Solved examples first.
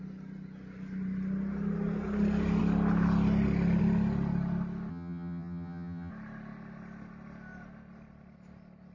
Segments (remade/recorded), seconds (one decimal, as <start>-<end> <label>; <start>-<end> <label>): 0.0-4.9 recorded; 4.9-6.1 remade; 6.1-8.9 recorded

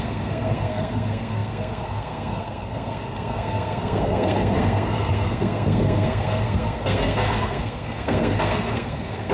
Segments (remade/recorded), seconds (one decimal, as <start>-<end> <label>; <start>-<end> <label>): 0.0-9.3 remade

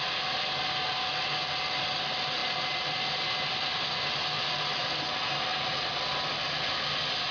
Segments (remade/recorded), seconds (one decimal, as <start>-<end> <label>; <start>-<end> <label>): 0.0-7.3 recorded

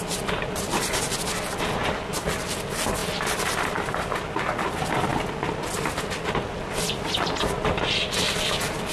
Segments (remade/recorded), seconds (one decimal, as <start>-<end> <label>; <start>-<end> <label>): 0.0-8.9 recorded

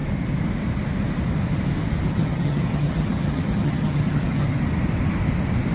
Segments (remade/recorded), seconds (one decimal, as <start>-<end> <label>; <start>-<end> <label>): 0.0-2.1 recorded; 2.1-4.6 remade; 4.6-5.7 recorded